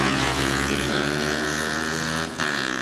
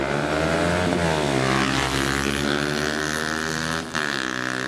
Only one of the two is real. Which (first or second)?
second